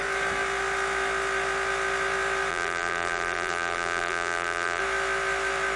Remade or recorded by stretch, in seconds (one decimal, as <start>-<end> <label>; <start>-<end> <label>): 0.0-2.5 recorded; 2.5-4.8 remade; 4.8-5.8 recorded